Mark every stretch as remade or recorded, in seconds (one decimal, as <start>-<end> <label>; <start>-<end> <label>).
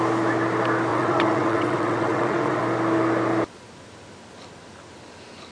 0.0-0.9 recorded; 0.9-2.6 remade; 2.6-5.5 recorded